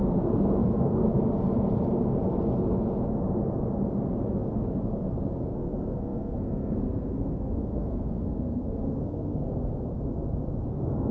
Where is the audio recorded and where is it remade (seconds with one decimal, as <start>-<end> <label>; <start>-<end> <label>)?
0.0-1.0 remade; 1.0-5.4 recorded; 5.4-9.9 remade; 9.9-10.7 recorded; 10.7-11.1 remade